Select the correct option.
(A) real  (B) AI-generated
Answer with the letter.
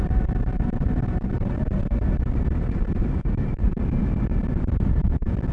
B